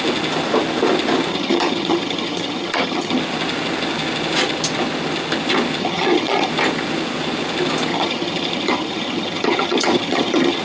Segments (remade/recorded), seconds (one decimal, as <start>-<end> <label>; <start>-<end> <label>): 0.0-1.3 recorded; 1.3-3.2 remade; 3.2-5.8 recorded; 5.8-6.5 remade; 6.5-7.9 recorded; 7.9-10.6 remade